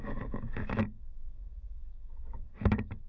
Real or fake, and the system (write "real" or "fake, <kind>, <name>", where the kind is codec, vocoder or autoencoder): fake, codec, DAC